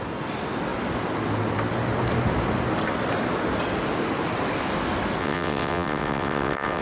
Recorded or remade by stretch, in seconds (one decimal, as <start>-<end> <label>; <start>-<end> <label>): 0.0-5.2 recorded; 5.2-6.8 remade